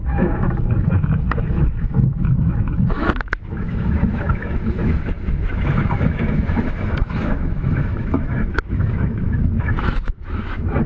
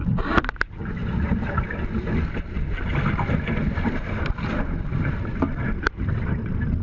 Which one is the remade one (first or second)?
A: first